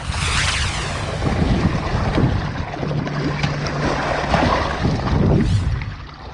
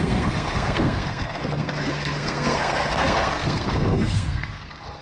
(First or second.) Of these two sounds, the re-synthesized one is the second